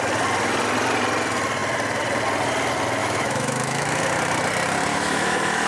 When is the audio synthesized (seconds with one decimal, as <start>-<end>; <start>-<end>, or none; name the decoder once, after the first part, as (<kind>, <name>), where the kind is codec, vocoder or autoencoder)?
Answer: 3.0-4.0 (autoencoder, DAC-VAE); 4.9-5.7